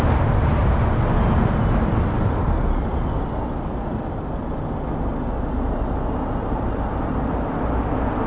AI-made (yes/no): no